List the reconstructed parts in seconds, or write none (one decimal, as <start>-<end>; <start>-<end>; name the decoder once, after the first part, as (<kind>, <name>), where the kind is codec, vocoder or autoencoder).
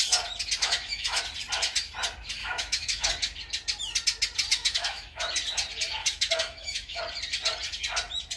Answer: 0.6-1.2 (autoencoder, DAC-VAE); 2.4-3.1; 4.5-5.3; 6.0-7.0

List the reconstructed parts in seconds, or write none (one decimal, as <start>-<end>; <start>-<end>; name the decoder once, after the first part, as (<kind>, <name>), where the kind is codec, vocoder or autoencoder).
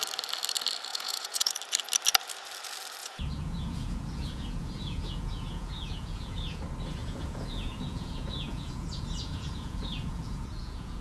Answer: 0.9-1.5 (vocoder, Vocos); 3.0-6.6; 7.0-11.0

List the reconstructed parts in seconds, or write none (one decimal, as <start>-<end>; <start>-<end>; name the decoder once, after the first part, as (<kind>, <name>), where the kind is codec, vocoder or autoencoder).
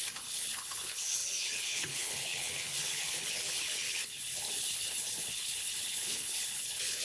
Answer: 0.0-7.0 (codec, HILCodec)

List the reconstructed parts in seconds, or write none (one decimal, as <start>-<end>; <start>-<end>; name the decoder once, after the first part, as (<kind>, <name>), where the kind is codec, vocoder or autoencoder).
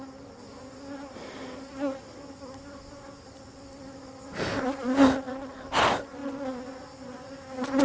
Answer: none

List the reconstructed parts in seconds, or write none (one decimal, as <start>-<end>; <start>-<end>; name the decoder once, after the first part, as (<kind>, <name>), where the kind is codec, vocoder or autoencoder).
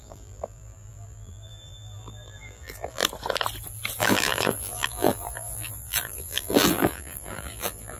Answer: 0.0-3.0 (vocoder, BigVGAN v2); 4.0-8.0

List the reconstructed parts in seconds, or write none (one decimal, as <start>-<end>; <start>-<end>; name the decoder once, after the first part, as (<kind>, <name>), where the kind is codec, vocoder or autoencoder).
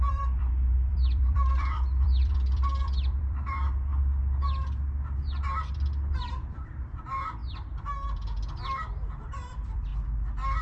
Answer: 0.0-3.9 (vocoder, BigVGAN v2); 5.5-7.4; 9.5-9.9